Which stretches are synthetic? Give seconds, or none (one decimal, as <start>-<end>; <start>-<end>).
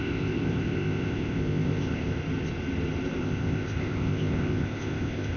0.0-2.2; 3.2-5.4